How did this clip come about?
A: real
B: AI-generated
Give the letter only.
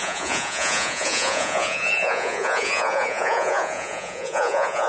B